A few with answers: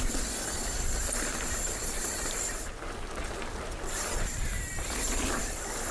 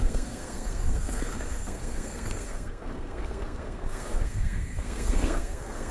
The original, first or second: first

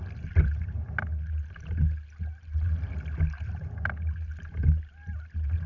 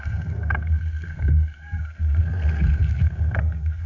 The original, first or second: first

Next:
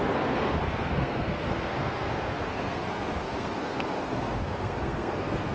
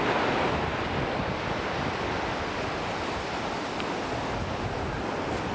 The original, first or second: second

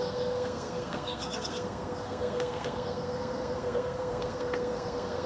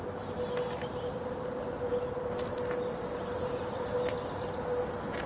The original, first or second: second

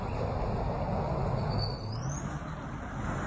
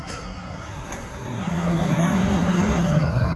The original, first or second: first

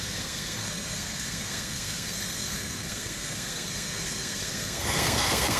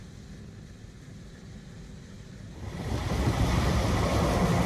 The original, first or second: second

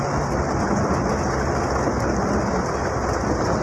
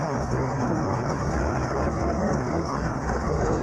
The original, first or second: first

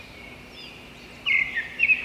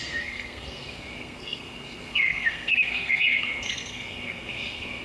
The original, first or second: first